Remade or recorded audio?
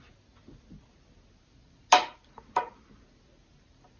recorded